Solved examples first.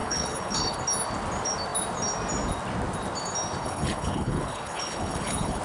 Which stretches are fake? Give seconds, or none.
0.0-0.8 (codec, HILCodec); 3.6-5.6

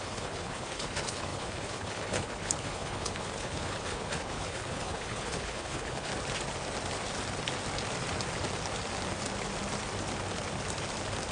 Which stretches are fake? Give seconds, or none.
0.0-6.1 (codec, HILCodec)

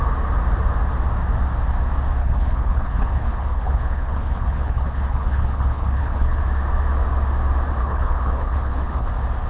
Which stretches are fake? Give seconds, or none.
2.2-6.4 (codec, HILCodec); 7.8-9.1

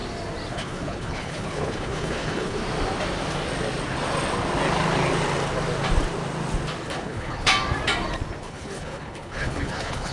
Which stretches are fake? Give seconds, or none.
0.5-2.6 (codec, HILCodec); 6.9-7.5; 8.4-10.1

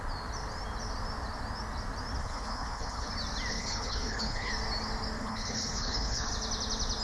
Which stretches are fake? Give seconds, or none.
2.2-3.1 (codec, HILCodec); 3.5-4.5; 5.2-6.3